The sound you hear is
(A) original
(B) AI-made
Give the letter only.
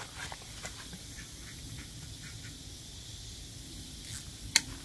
A